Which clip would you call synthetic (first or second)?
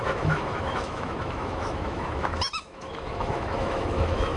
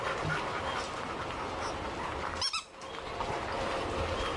first